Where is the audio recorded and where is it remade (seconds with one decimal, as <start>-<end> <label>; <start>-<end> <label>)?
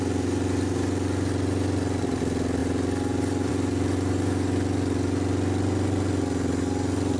0.0-7.2 recorded